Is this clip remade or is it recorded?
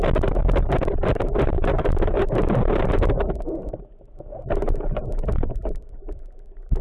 remade